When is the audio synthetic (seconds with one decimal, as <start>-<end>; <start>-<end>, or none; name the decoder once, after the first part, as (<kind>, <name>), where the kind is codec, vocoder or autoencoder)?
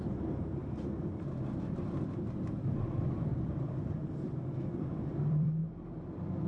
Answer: 0.0-6.5 (vocoder, BigVGAN v2)